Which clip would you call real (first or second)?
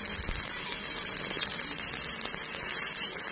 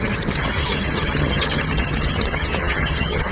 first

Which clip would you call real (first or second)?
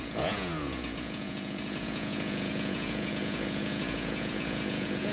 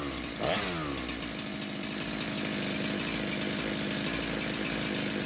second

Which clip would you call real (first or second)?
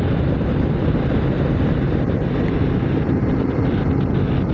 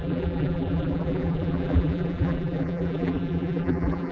first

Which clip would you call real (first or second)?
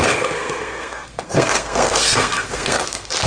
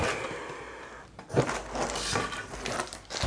second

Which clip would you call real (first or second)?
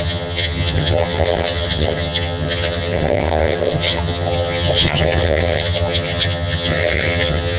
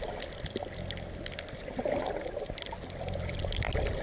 second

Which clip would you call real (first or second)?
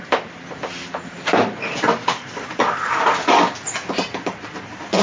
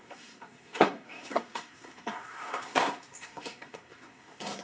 first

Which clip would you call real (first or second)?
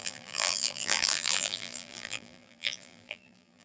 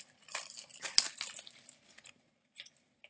second